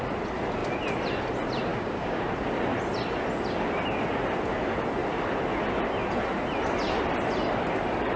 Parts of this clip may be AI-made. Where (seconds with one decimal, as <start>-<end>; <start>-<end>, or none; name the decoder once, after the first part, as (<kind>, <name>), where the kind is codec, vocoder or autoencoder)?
1.7-2.2 (codec, DAC)